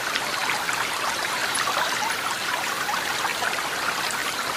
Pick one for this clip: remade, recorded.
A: recorded